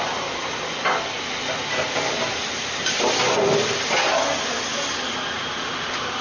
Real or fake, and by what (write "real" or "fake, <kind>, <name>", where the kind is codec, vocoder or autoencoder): real